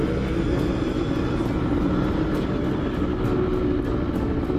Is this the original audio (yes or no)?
yes